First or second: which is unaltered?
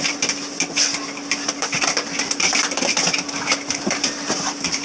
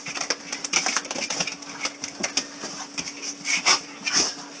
second